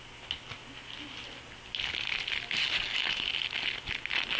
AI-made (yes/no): no